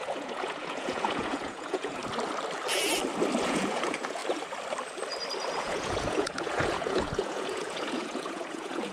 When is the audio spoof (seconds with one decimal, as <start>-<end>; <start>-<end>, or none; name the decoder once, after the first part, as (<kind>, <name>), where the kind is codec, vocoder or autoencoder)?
0.0-2.0 (vocoder, Vocos); 3.4-4.2; 5.6-8.9

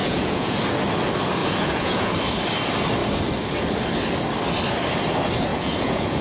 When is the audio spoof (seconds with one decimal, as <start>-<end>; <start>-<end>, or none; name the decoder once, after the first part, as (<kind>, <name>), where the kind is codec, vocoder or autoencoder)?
0.0-0.6 (vocoder, Vocos); 1.4-2.1; 5.5-6.2

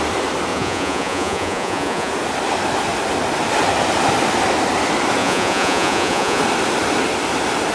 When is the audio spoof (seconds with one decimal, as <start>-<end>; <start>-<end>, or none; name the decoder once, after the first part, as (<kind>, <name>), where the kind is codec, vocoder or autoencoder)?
0.5-2.1 (vocoder, Vocos); 5.2-6.4

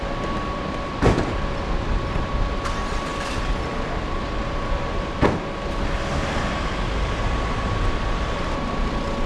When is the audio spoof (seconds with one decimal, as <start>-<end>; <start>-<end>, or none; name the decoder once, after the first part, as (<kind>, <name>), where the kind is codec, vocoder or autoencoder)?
none

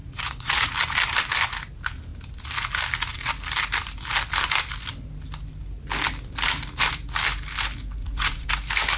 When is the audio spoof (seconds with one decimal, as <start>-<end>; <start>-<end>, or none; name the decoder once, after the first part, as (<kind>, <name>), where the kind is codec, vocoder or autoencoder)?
0.0-0.7 (vocoder, Vocos); 8.0-8.5